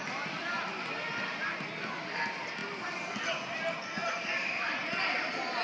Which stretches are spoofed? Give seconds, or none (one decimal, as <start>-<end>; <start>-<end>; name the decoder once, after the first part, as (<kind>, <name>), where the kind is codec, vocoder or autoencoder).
4.0-4.8 (vocoder, BigVGAN v2)

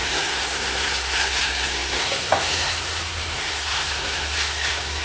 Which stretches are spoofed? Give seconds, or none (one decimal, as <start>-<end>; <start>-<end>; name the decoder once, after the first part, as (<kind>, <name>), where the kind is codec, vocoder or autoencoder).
0.0-5.0 (codec, SNAC)

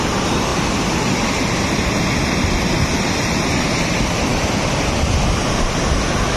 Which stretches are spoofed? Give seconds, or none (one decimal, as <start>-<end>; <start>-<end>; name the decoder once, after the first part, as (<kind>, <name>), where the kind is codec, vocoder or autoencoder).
none

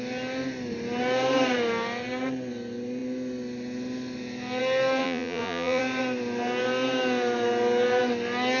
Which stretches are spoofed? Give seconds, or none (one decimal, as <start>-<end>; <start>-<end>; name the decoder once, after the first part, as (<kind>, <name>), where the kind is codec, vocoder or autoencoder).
5.0-5.8 (vocoder, Vocos)

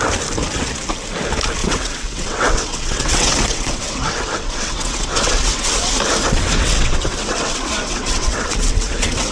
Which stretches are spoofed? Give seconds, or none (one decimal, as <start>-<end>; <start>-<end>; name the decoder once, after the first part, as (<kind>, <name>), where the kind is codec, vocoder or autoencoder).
1.6-5.7 (vocoder, WaveNeXt); 6.2-9.3

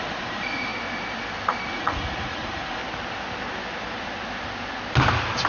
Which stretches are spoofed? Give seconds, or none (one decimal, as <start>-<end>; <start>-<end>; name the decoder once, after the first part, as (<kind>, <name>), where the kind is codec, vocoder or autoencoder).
0.0-0.7 (vocoder, Vocos); 1.7-2.8

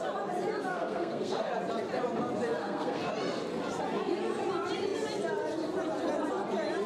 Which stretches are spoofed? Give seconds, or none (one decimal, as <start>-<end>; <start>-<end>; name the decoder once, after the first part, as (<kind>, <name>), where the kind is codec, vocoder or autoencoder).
0.7-1.5 (codec, SNAC); 2.6-3.1

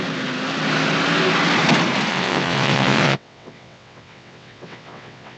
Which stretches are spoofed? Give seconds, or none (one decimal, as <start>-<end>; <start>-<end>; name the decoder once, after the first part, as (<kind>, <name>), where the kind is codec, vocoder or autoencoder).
2.1-5.4 (vocoder, WaveNeXt)